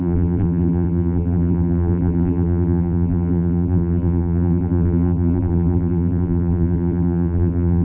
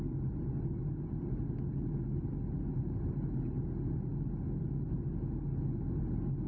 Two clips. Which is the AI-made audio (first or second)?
first